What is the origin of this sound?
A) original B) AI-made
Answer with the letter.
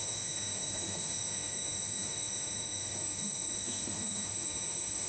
B